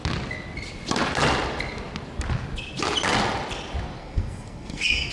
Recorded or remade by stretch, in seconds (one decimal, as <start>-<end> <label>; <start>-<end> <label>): 0.0-4.0 recorded; 4.0-5.1 remade